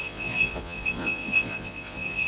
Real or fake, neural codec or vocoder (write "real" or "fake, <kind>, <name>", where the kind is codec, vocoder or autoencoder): fake, vocoder, Vocos